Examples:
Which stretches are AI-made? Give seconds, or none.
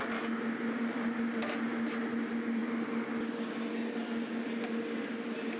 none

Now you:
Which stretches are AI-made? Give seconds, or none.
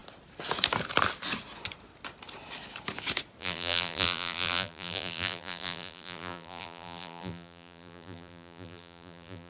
3.4-9.5 (vocoder, BigVGAN v2)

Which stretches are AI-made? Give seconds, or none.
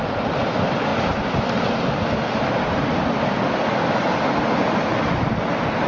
none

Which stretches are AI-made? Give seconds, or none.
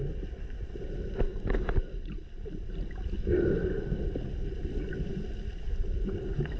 none